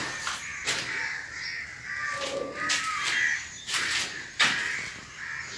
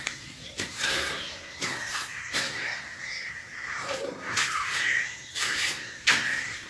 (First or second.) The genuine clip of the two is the first